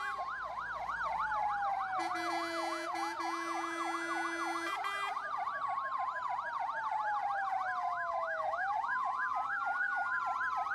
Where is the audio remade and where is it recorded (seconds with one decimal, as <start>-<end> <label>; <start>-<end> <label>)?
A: 0.0-7.8 recorded; 7.8-10.2 remade; 10.2-10.7 recorded